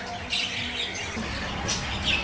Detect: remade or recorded recorded